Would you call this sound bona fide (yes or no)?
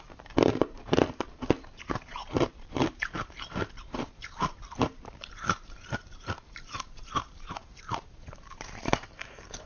no